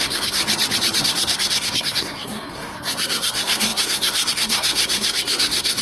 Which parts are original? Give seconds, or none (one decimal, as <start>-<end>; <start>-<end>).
0.4-1.0